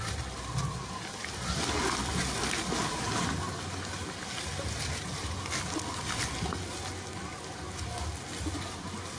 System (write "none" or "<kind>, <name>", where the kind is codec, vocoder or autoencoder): none